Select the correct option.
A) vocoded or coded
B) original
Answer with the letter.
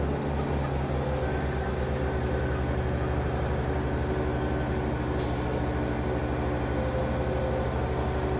B